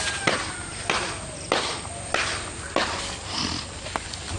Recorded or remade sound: recorded